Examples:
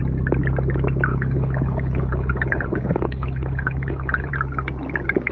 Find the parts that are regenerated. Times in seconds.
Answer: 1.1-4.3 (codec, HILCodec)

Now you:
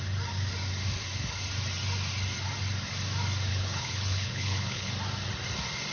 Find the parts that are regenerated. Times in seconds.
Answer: 3.5-4.9 (codec, HILCodec)

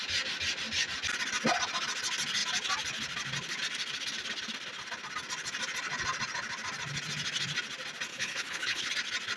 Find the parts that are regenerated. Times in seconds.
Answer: 8.1-8.9 (codec, HILCodec)

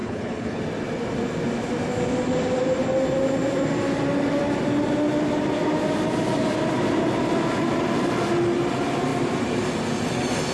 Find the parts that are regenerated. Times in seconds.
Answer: 0.0-0.6 (codec, HILCodec)

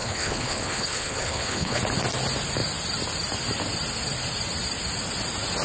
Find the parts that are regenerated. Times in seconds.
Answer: 0.0-1.8 (codec, HILCodec)

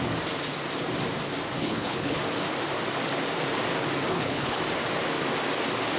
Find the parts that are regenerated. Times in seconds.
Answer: 1.6-2.2 (codec, HILCodec); 4.1-4.6

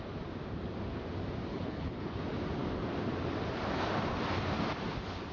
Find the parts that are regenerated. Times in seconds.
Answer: 1.5-2.2 (codec, HILCodec)